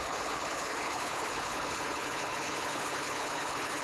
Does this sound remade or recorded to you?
remade